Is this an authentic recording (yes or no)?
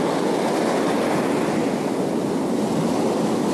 yes